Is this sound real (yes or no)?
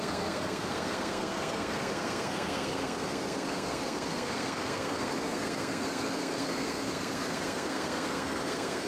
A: no